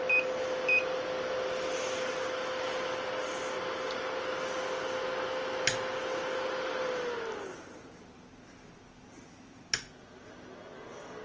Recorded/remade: recorded